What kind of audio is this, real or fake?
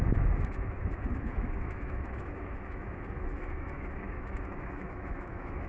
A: fake